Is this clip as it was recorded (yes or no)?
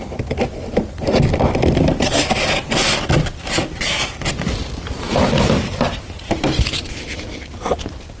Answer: yes